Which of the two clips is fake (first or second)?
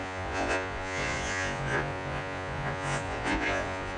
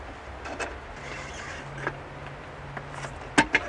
first